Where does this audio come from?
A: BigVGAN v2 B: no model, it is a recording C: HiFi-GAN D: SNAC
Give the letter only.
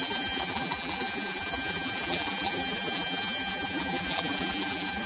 A